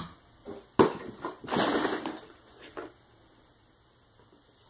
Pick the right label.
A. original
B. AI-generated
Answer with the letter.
A